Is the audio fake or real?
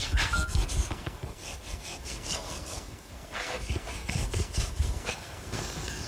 fake